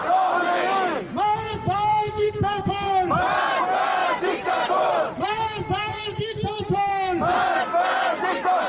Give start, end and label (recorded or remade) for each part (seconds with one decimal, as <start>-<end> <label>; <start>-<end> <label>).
0.0-1.9 recorded; 1.9-2.7 remade; 2.7-8.7 recorded